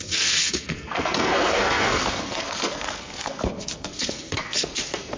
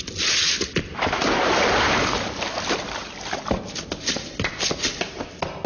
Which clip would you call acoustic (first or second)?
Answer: second